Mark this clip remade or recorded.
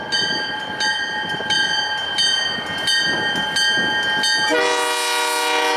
recorded